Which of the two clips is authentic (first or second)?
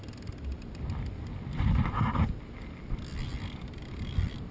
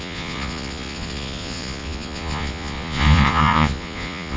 first